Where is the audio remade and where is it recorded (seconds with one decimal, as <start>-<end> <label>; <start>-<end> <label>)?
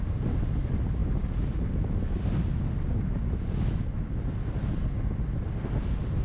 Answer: 0.0-6.2 recorded